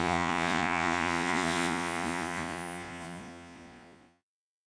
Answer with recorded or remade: remade